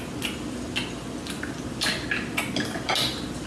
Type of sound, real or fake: real